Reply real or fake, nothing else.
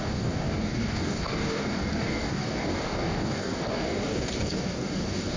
fake